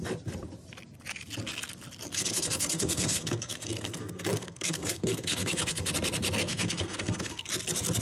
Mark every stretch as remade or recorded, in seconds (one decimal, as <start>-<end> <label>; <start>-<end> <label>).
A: 0.0-2.1 recorded; 2.1-5.9 remade; 5.9-6.4 recorded; 6.4-7.5 remade; 7.5-8.0 recorded